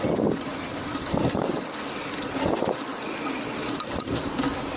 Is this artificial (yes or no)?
no